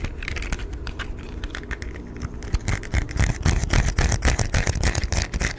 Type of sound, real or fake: real